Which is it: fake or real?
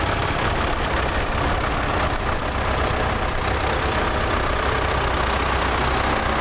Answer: real